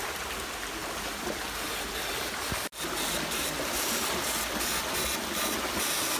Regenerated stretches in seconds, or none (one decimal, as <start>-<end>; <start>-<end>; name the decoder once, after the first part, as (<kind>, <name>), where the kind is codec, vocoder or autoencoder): none